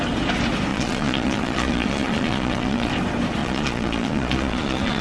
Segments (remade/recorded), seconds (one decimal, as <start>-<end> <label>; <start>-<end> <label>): 0.0-0.7 recorded; 0.7-2.9 remade; 2.9-3.4 recorded; 3.4-5.0 remade